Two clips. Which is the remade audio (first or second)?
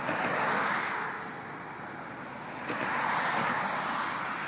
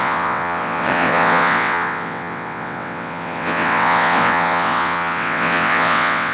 second